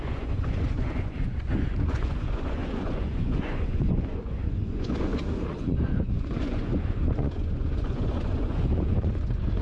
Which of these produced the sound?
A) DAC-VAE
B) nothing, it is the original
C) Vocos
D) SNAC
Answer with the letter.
C